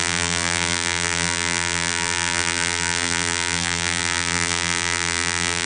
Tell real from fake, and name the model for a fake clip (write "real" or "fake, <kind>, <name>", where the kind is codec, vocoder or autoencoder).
fake, vocoder, BigVGAN v2